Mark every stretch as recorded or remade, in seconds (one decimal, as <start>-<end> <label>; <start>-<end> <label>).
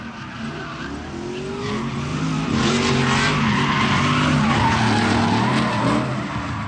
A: 0.0-2.1 recorded; 2.1-2.7 remade; 2.7-6.7 recorded